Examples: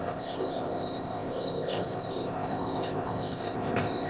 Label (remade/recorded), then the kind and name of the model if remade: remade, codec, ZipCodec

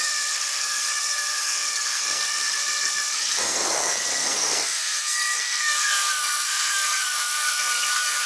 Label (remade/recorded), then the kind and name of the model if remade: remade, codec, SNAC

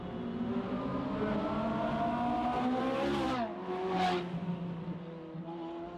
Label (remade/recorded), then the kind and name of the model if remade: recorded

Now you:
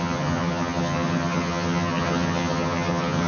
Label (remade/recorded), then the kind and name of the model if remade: remade, vocoder, HiFi-GAN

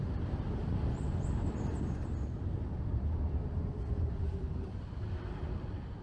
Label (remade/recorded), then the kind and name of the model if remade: recorded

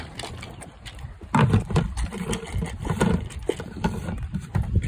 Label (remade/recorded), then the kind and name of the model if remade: remade, vocoder, BigVGAN v2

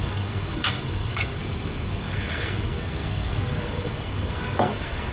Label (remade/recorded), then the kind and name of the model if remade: remade, codec, SNAC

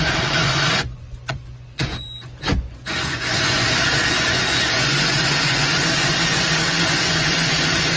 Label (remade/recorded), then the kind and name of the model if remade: remade, vocoder, Vocos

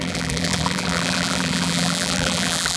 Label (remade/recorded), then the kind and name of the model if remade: remade, vocoder, BigVGAN v2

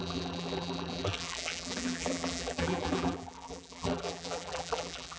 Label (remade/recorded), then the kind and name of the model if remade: remade, vocoder, BigVGAN v2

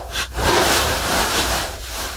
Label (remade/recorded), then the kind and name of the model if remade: remade, vocoder, BigVGAN v2